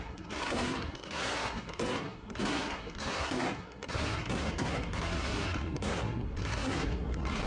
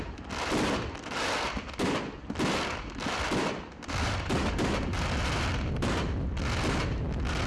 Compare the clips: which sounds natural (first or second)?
second